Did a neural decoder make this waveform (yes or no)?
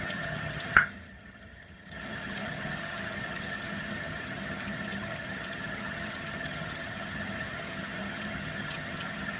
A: yes